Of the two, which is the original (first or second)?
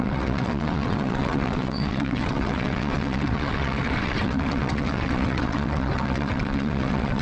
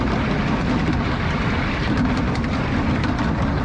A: second